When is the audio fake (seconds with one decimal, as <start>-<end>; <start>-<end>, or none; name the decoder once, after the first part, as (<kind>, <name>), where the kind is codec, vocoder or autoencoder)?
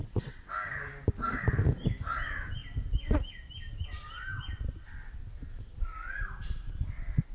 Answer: 0.0-0.5 (vocoder, WaveNeXt)